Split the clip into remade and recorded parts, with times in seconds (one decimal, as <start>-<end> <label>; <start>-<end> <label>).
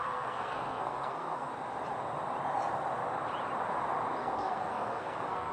0.0-1.5 remade; 1.5-4.2 recorded; 4.2-5.5 remade